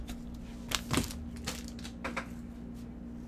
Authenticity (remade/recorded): recorded